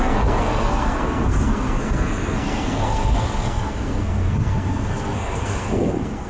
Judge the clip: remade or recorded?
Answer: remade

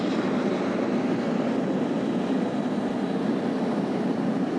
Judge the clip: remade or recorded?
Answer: recorded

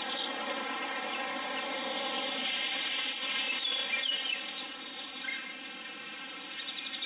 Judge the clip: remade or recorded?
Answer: recorded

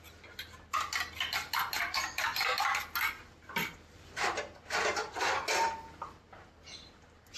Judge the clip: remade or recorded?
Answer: recorded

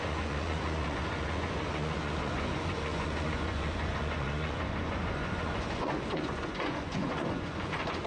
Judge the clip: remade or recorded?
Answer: remade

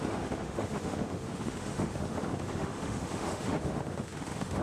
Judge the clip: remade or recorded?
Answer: remade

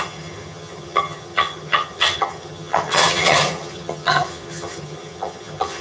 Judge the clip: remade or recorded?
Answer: remade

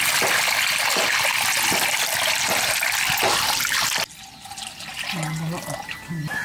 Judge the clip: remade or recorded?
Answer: recorded